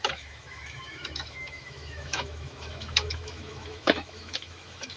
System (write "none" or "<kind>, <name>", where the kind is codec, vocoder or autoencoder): autoencoder, DAC-VAE